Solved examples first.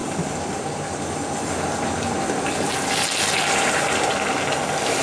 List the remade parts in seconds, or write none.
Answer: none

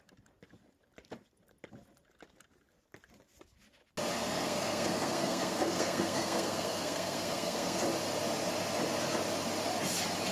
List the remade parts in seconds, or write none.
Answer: 4.1-7.8 (codec, SNAC)

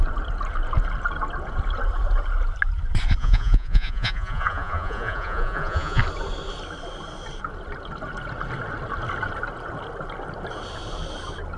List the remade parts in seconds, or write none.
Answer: 3.2-6.0 (vocoder, Vocos)

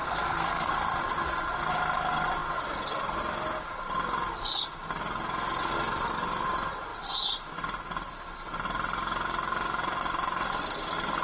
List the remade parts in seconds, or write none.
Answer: 0.0-0.7 (codec, SNAC)

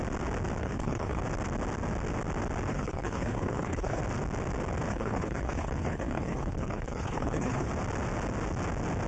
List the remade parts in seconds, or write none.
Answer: 0.6-1.2 (codec, HILCodec); 2.7-4.0; 4.9-7.7

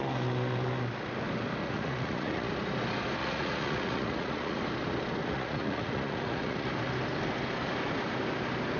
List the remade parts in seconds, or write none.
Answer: 1.6-2.5 (vocoder, Vocos); 3.2-4.6; 5.2-6.7

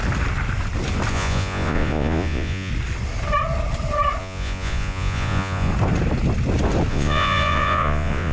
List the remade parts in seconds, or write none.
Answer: 1.1-2.7 (vocoder, Vocos); 4.2-5.7; 6.9-8.3